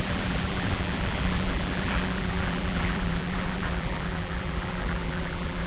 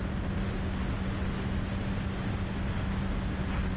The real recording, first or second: second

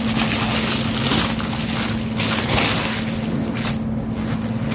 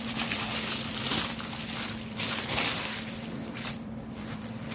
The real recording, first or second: first